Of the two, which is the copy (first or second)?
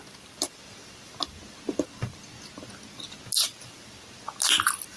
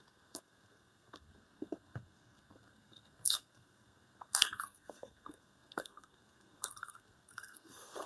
second